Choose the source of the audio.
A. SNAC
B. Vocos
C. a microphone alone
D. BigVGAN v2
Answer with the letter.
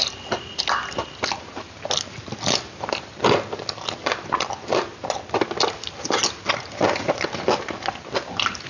C